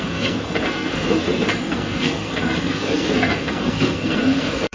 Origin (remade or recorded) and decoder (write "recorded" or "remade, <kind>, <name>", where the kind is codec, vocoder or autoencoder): remade, codec, SNAC